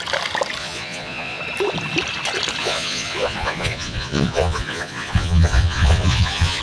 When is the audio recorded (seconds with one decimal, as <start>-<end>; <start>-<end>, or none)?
0.0-0.6; 1.4-2.6